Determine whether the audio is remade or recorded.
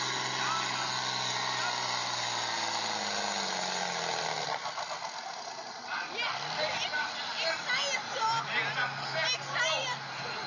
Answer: recorded